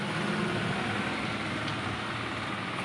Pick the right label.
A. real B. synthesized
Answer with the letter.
A